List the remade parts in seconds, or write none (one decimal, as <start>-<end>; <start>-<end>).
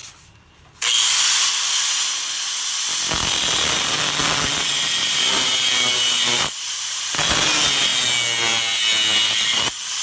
5.0-7.3